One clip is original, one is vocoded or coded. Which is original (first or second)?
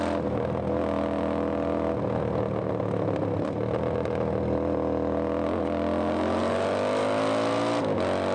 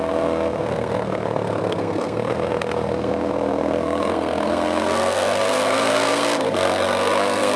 first